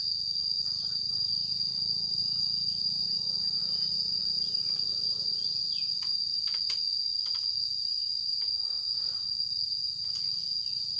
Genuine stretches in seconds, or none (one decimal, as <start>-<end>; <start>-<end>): 0.0-11.0